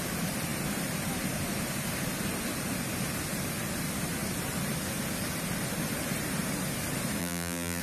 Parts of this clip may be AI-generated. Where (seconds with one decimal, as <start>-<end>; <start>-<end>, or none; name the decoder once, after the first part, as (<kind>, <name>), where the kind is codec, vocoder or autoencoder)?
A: 7.2-7.8 (vocoder, BigVGAN v2)